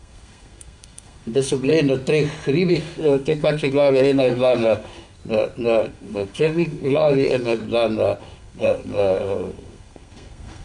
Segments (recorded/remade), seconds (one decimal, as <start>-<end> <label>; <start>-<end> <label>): 0.0-1.7 remade; 1.7-2.7 recorded; 2.7-5.2 remade; 5.2-5.8 recorded; 5.8-7.6 remade; 7.6-8.2 recorded; 8.2-10.6 remade